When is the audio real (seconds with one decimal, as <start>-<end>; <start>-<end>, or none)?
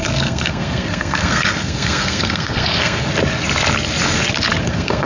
3.1-4.6